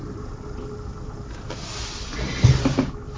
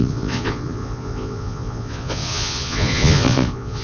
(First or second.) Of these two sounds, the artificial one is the second